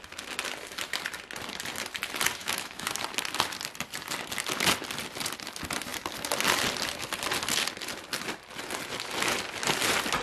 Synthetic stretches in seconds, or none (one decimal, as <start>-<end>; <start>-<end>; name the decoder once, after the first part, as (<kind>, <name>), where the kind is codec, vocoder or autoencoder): 2.4-2.9 (autoencoder, DAC-VAE)